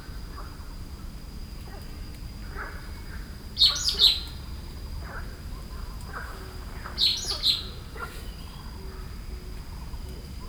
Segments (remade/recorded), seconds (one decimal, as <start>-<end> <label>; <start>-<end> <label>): 0.0-10.5 recorded